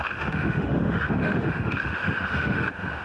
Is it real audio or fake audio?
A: fake